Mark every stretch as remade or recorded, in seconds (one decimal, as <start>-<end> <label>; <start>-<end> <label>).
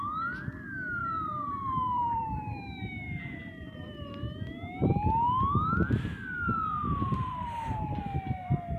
0.0-1.0 recorded; 1.0-4.1 remade; 4.1-6.8 recorded; 6.8-8.0 remade; 8.0-8.8 recorded